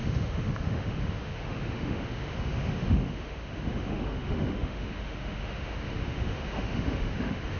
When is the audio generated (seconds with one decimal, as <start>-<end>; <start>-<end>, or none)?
0.0-7.6